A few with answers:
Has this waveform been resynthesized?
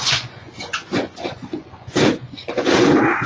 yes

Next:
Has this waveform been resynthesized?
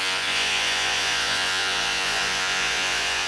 yes